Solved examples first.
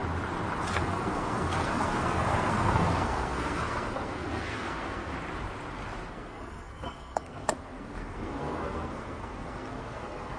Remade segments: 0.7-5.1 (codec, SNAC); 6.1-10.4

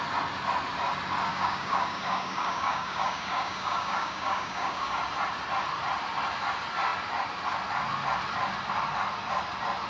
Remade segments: 1.3-5.0 (codec, DAC)

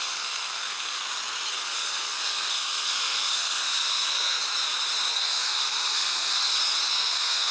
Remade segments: 0.0-1.0 (codec, SNAC); 1.5-4.4; 5.1-6.4; 6.9-7.5